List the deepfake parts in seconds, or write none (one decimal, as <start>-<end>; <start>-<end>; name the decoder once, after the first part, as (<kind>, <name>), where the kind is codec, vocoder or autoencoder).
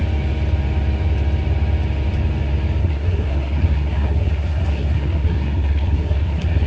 2.8-6.7 (codec, SNAC)